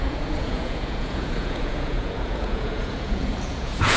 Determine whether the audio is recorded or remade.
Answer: remade